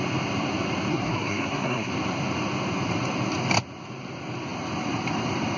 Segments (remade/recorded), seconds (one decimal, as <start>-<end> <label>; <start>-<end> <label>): 0.0-0.9 recorded; 0.9-1.9 remade; 1.9-5.6 recorded